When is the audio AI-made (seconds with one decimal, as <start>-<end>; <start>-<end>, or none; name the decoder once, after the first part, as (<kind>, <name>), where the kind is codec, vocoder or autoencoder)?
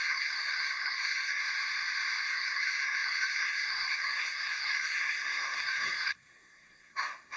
0.0-1.4 (codec, SNAC); 2.3-7.4